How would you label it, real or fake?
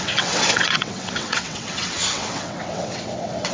fake